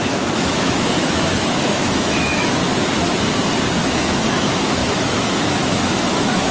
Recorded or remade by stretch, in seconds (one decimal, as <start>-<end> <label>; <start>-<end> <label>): 0.0-2.6 remade; 2.6-3.9 recorded; 3.9-6.5 remade